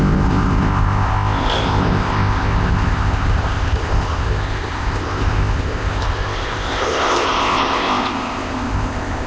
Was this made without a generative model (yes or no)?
no